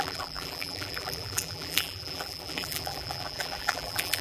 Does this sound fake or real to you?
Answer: fake